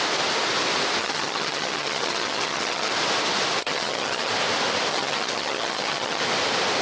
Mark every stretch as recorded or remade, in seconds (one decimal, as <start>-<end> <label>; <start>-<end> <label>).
0.0-1.0 recorded; 1.0-2.9 remade; 2.9-3.6 recorded; 3.6-4.3 remade; 4.3-4.9 recorded; 4.9-6.2 remade; 6.2-6.8 recorded